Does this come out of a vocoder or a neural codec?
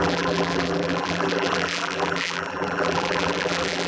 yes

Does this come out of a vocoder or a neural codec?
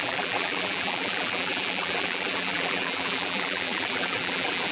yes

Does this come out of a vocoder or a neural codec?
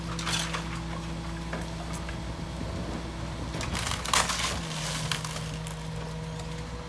no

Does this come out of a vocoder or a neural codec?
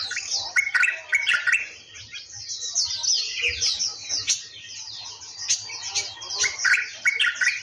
no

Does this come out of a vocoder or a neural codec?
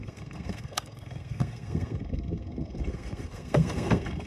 yes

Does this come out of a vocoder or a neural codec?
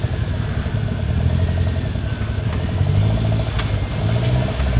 no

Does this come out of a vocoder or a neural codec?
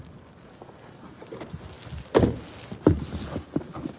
no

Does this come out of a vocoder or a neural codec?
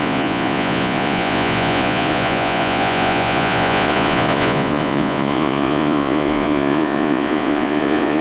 yes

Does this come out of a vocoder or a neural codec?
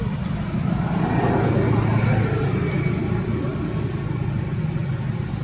no